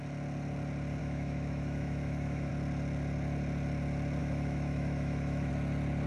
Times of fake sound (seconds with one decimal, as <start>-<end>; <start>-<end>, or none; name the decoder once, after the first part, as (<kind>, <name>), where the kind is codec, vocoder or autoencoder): 1.0-2.5 (autoencoder, DAC-VAE); 4.2-5.5